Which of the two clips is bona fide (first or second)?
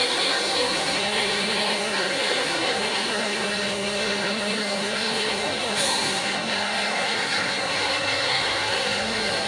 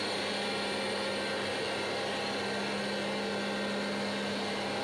second